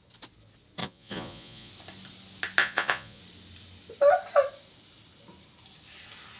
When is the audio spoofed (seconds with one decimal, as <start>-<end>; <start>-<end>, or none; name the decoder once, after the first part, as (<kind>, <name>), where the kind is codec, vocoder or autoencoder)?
0.8-1.7 (vocoder, Vocos); 2.6-3.2